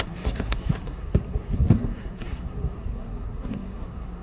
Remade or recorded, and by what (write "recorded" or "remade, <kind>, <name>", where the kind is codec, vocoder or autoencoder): remade, codec, SNAC